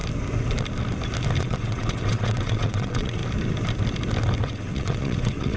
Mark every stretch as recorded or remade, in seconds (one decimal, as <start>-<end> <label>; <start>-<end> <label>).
0.0-1.4 recorded; 1.4-3.2 remade; 3.2-4.4 recorded; 4.4-5.6 remade